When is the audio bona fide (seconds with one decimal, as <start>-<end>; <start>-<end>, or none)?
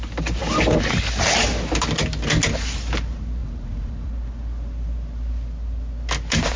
0.0-3.4; 4.1-6.6